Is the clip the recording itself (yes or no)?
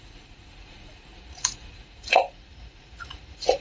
no